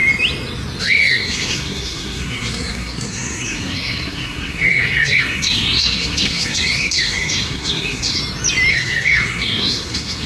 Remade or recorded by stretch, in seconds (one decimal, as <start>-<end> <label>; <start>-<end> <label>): 0.0-0.8 recorded; 0.8-8.2 remade; 8.2-8.7 recorded; 8.7-10.3 remade